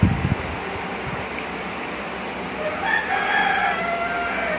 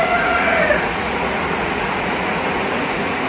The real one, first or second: first